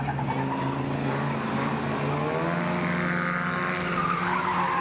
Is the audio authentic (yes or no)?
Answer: yes